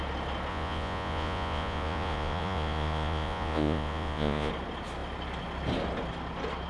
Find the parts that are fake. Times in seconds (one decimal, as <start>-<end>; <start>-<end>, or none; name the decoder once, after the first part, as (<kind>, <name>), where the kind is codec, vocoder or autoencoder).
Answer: 0.5-4.5 (vocoder, Vocos)